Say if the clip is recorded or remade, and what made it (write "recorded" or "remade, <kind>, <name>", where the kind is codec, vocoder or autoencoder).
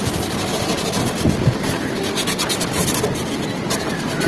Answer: recorded